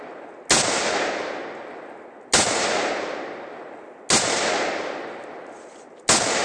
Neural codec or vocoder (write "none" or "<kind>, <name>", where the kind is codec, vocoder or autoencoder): none